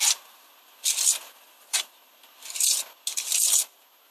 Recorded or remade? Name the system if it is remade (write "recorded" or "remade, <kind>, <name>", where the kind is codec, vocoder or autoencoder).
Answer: recorded